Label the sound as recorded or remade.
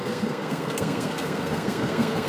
remade